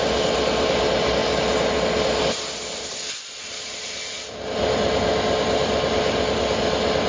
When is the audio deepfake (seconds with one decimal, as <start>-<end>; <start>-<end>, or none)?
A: none